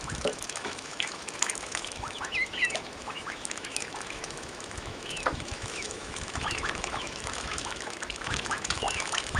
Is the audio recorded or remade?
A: remade